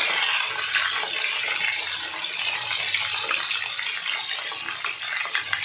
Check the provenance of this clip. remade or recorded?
recorded